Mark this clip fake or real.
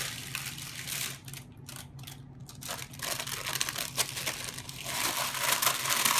real